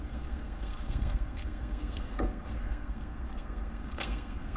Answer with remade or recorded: remade